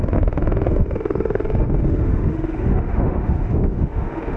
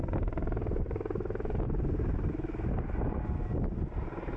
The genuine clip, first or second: second